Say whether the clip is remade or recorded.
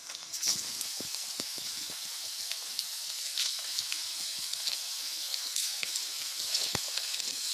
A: remade